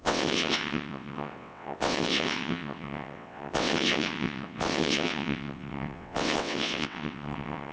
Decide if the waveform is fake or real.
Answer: fake